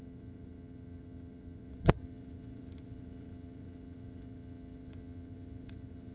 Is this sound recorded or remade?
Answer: remade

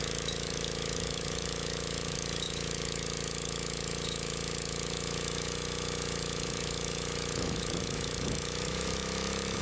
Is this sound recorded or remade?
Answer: remade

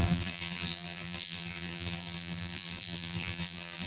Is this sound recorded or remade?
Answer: remade